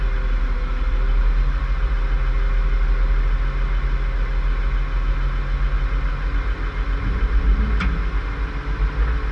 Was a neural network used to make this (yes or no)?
no